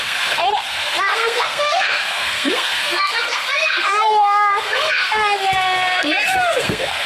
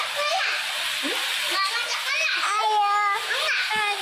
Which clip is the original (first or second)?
second